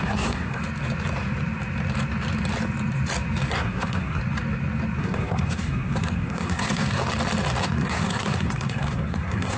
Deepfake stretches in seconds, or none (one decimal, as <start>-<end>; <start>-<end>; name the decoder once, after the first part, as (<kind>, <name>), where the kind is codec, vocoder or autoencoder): 0.0-0.6 (codec, SNAC); 3.5-4.2; 5.0-7.0; 7.6-9.6